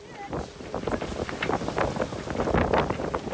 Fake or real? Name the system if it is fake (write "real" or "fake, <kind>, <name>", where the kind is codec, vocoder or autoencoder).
real